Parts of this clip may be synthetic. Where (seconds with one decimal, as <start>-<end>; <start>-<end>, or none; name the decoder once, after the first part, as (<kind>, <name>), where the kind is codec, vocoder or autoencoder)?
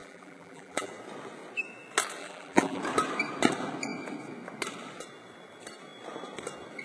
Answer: 0.0-0.9 (vocoder, BigVGAN v2); 2.2-2.8